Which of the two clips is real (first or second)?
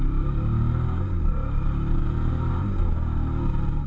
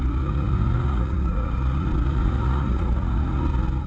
first